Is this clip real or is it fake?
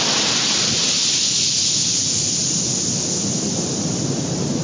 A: real